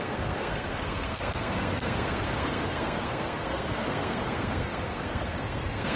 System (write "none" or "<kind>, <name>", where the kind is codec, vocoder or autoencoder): codec, SNAC